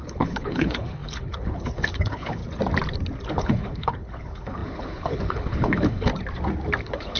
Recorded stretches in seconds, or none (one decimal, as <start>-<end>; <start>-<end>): 2.4-3.3; 6.1-6.8